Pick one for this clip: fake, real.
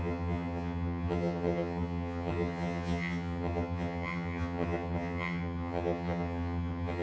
fake